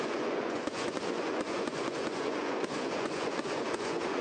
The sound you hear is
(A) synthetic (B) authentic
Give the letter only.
A